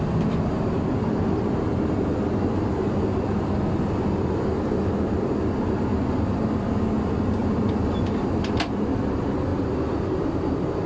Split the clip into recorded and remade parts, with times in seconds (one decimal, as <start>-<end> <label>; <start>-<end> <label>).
0.0-7.4 recorded; 7.4-8.8 remade; 8.8-9.5 recorded; 9.5-10.9 remade